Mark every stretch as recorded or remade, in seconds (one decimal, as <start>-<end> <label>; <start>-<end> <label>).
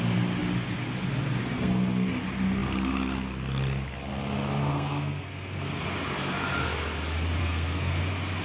0.0-1.4 recorded; 1.4-2.1 remade; 2.1-4.6 recorded; 4.6-5.8 remade; 5.8-7.4 recorded; 7.4-8.0 remade; 8.0-8.4 recorded